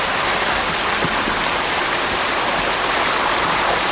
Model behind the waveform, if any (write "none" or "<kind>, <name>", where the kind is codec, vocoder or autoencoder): none